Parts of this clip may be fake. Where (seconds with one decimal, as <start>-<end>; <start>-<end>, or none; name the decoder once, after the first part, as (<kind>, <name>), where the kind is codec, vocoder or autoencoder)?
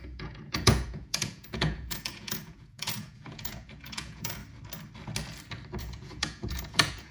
0.0-4.4 (vocoder, Vocos); 5.8-7.1